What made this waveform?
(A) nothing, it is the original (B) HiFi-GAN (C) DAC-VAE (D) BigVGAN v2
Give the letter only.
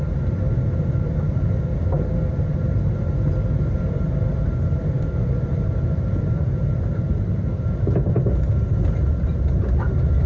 A